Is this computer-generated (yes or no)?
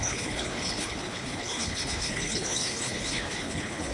yes